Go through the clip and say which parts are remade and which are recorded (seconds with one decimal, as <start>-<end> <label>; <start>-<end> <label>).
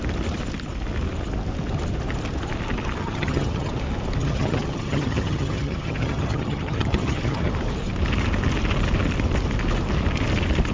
0.0-3.0 recorded; 3.0-3.7 remade; 3.7-4.2 recorded; 4.2-7.5 remade; 7.5-10.7 recorded